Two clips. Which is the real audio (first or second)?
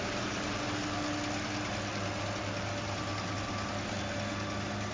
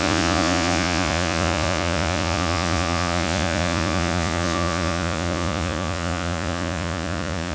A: first